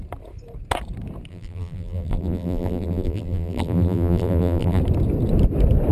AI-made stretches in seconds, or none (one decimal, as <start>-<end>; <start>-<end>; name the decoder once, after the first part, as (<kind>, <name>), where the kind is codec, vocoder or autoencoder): 1.3-4.8 (vocoder, BigVGAN v2)